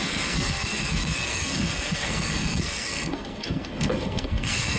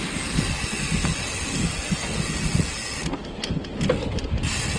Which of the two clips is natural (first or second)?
second